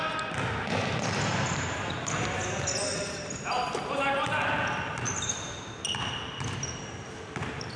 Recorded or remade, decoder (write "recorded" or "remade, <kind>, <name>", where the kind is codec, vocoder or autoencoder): recorded